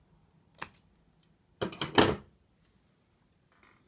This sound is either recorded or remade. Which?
recorded